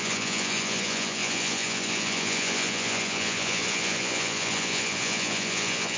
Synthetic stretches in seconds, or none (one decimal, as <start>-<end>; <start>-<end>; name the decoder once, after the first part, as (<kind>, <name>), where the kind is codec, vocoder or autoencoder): 0.0-6.0 (vocoder, Vocos)